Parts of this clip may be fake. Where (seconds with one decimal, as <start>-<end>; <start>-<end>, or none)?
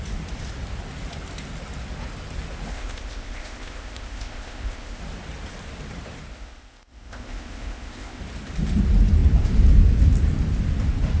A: 2.7-5.0; 6.3-8.2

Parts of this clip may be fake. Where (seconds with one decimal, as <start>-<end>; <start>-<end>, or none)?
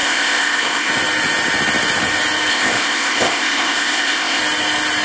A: 0.0-0.9; 2.5-4.4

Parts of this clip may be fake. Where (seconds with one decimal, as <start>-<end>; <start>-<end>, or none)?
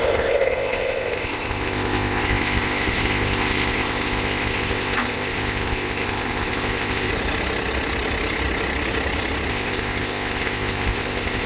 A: 0.0-7.1; 9.5-11.5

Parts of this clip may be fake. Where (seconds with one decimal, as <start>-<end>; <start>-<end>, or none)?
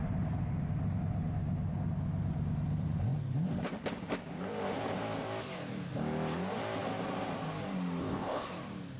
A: 8.0-8.5